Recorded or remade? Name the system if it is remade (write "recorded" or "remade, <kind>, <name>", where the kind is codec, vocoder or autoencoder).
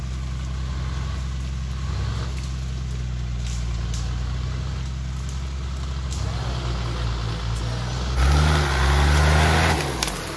recorded